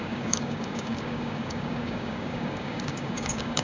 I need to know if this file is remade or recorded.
remade